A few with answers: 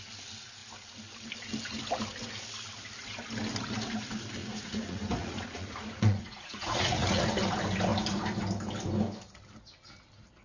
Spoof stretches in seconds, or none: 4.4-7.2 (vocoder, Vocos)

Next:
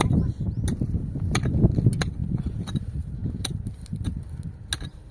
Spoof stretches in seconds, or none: 2.2-2.8 (vocoder, BigVGAN v2); 3.2-3.8

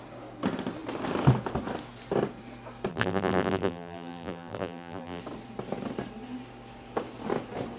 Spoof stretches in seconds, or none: 2.9-5.2 (vocoder, BigVGAN v2)

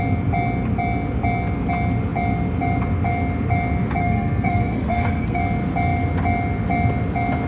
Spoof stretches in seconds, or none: 4.0-5.4 (codec, SNAC)

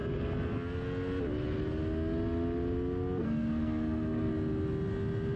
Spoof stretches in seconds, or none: 3.2-4.3 (codec, SNAC)

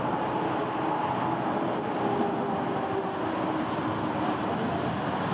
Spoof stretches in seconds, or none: none